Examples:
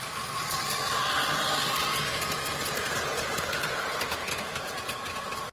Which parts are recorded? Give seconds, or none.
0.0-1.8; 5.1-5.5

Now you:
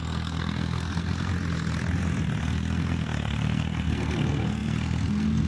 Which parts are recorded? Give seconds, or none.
1.3-2.4

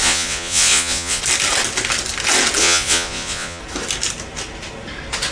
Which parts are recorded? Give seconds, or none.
1.2-2.6; 3.6-5.3